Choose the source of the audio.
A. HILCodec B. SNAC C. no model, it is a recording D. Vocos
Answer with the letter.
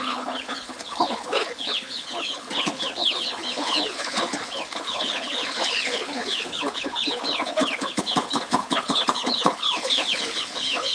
A